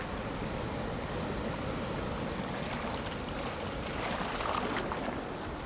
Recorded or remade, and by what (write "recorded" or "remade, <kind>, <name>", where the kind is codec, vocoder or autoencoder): recorded